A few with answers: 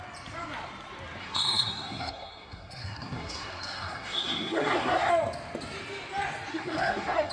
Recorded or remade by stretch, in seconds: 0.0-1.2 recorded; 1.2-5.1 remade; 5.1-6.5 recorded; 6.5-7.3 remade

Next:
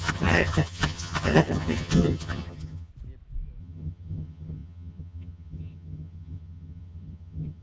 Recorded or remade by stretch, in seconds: 0.0-2.9 remade; 2.9-3.6 recorded; 3.6-7.6 remade

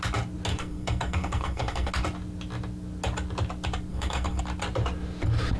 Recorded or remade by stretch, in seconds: 0.0-0.5 recorded; 0.5-1.9 remade; 1.9-3.9 recorded; 3.9-4.4 remade; 4.4-5.6 recorded

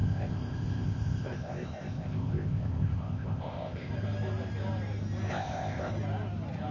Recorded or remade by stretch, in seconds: 0.0-3.9 remade; 3.9-5.3 recorded; 5.3-5.9 remade; 5.9-6.7 recorded

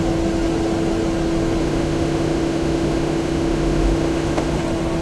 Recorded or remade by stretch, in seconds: 0.0-1.6 recorded; 1.6-4.6 remade; 4.6-5.0 recorded

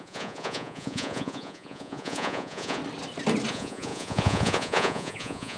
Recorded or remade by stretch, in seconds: 0.0-2.8 remade; 2.8-3.5 recorded; 3.5-5.6 remade

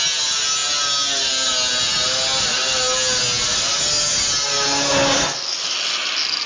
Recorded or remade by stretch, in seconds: 0.0-6.5 recorded

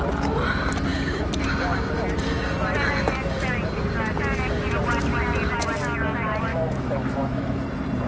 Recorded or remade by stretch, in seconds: 0.0-6.5 recorded; 6.5-7.6 remade; 7.6-8.1 recorded